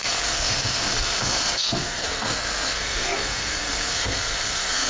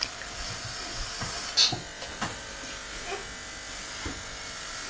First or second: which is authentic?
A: second